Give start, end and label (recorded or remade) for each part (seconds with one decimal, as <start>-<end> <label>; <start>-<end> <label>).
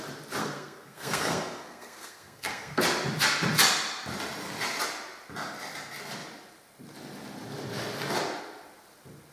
0.0-0.4 recorded; 0.4-2.8 remade; 2.8-9.3 recorded